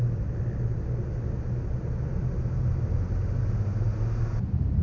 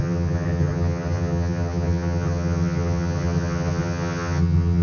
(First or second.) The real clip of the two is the first